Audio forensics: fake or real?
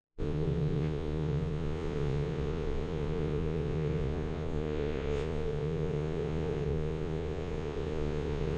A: fake